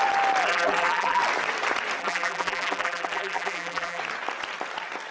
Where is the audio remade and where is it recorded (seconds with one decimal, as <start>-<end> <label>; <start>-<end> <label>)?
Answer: 0.0-0.4 recorded; 0.4-1.2 remade; 1.2-2.0 recorded; 2.0-4.0 remade; 4.0-5.1 recorded